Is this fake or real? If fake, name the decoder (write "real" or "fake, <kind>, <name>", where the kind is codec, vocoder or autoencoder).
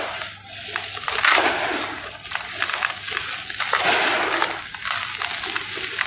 real